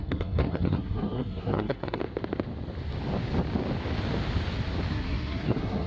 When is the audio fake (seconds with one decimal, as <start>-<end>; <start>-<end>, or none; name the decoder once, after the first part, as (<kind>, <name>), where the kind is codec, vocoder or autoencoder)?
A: 0.0-2.0 (codec, SNAC); 4.9-5.9